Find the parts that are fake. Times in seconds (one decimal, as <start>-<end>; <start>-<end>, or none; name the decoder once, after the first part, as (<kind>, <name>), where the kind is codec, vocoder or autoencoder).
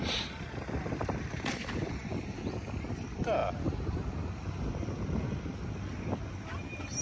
none